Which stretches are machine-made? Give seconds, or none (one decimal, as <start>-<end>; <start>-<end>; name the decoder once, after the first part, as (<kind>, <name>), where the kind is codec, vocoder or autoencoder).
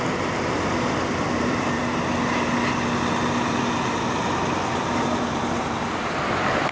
0.0-1.8 (vocoder, BigVGAN v2); 5.8-6.7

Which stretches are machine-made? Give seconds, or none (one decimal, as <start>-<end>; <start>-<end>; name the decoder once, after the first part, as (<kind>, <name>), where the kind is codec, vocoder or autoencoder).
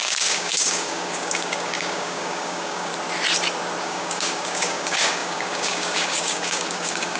0.0-2.9 (codec, DAC); 3.8-7.2